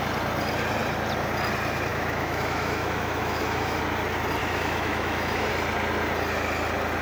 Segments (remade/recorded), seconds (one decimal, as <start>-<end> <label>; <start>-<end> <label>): 0.0-1.9 recorded; 1.9-3.8 remade; 3.8-4.4 recorded; 4.4-5.5 remade; 5.5-7.0 recorded